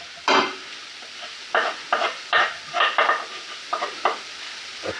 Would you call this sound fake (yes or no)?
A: no